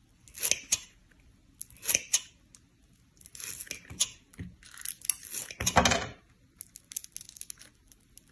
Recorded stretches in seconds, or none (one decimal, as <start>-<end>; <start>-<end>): 0.0-8.3